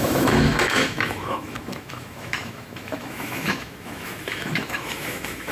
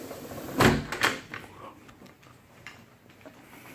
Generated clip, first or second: first